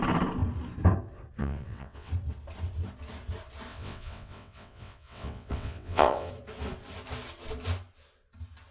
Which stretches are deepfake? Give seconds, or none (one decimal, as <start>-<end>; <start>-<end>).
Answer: 1.4-2.1; 3.7-6.3